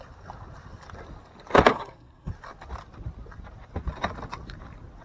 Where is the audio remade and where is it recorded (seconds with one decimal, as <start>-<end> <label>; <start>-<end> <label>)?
0.0-1.7 recorded; 1.7-2.3 remade; 2.3-5.0 recorded